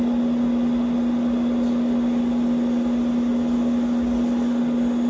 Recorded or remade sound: recorded